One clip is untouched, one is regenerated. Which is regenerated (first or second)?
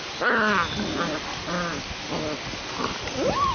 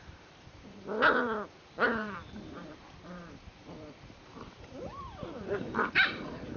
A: second